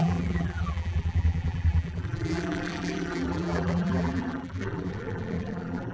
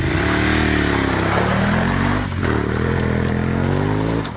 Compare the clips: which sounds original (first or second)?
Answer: second